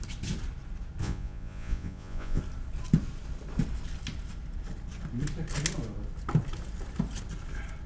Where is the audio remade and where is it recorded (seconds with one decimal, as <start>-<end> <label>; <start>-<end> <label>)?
0.0-1.0 recorded; 1.0-2.4 remade; 2.4-7.9 recorded